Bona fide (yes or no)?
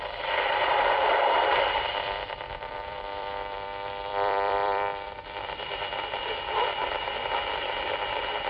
no